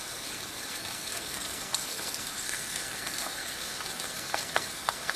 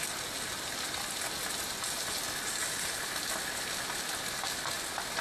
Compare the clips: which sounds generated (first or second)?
first